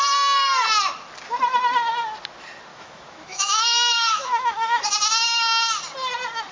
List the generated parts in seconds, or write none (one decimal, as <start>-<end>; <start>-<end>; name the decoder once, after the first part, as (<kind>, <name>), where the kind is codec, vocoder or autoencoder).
2.7-4.8 (autoencoder, DAC-VAE)

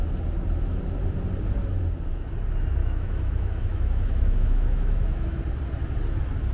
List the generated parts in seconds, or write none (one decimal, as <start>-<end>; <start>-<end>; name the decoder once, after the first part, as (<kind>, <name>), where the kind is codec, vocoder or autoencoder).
2.8-5.4 (autoencoder, DAC-VAE)

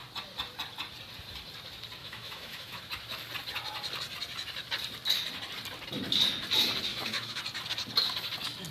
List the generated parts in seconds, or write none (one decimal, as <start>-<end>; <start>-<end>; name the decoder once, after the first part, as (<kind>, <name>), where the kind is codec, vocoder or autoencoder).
2.0-2.8 (autoencoder, DAC-VAE); 6.9-7.4

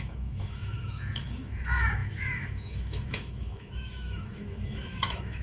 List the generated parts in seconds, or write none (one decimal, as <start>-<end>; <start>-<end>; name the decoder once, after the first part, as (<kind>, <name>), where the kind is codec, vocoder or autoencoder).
0.0-5.4 (autoencoder, DAC-VAE)